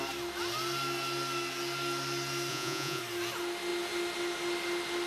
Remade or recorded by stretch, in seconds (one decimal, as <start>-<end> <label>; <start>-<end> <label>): 0.0-2.5 recorded; 2.5-3.0 remade; 3.0-5.1 recorded